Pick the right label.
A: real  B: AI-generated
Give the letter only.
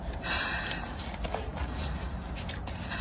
A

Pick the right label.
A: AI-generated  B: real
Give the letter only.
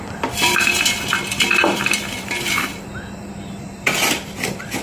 A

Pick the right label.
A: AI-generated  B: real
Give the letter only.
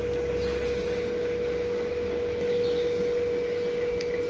B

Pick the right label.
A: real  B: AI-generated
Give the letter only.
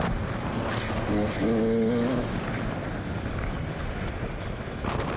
A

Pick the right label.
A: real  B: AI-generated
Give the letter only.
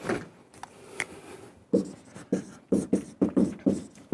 B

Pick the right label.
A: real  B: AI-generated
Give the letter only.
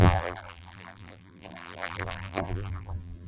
B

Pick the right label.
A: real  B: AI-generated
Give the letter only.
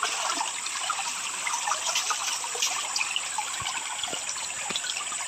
A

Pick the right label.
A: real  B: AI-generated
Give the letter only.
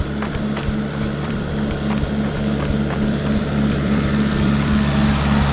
B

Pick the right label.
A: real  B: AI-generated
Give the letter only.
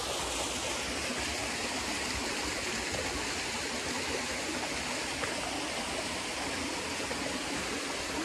A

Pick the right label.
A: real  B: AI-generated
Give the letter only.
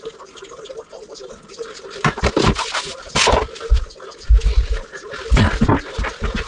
B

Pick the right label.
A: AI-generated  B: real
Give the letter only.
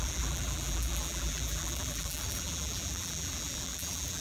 A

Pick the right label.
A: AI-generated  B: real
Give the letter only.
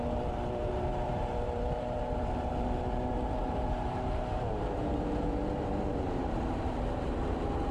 A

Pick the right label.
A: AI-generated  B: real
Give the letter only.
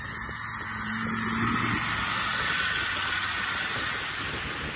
B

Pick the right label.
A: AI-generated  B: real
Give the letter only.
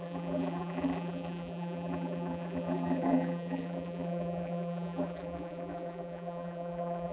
A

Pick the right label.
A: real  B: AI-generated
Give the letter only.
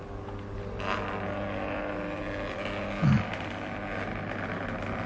A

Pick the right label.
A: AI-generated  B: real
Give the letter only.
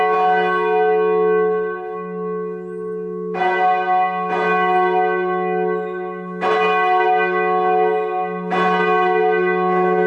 B